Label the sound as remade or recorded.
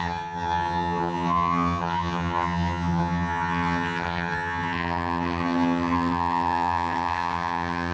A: remade